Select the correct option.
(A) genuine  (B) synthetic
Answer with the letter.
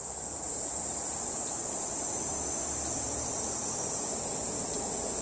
A